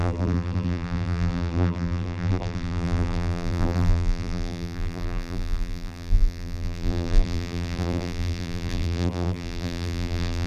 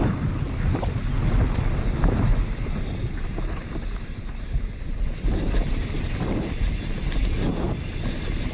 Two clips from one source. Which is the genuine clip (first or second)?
second